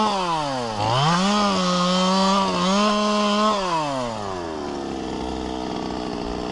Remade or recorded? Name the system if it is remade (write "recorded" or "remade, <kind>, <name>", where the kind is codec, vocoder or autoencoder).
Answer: recorded